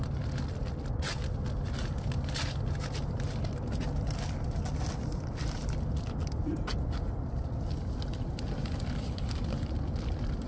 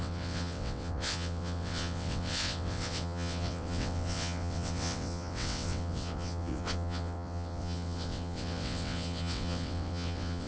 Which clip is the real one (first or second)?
first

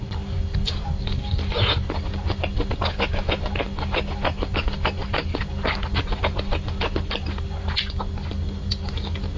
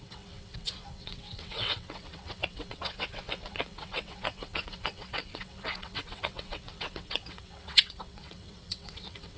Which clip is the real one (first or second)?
first